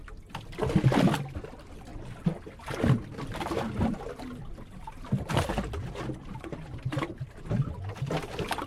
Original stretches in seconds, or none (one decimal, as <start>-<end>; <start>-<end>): 0.0-8.7